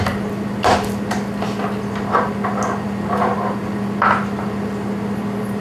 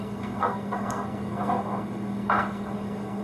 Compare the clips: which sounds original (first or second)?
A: first